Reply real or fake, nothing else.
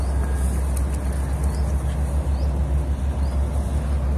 real